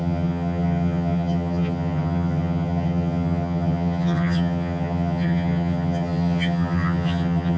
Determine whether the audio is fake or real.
fake